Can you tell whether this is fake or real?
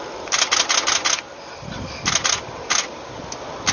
real